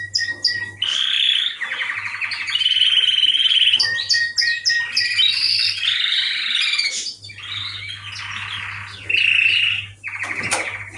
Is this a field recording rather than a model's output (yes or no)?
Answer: yes